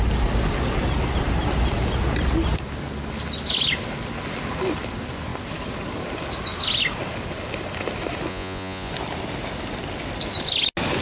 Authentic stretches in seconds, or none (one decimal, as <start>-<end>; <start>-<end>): 0.0-8.3; 8.9-11.0